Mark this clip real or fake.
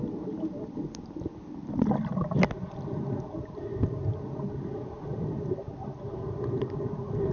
real